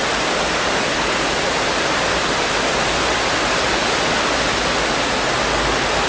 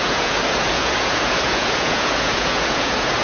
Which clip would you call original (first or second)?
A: first